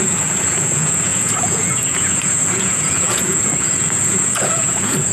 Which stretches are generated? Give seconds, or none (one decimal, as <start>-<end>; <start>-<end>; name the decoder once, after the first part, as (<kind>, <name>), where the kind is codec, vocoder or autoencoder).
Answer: 0.0-5.1 (vocoder, Vocos)